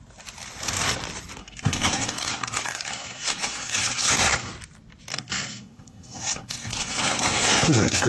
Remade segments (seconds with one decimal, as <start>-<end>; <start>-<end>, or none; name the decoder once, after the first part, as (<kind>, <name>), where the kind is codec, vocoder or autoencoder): 1.4-4.5 (codec, SNAC); 5.1-8.1